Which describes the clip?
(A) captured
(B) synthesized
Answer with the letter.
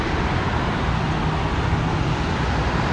A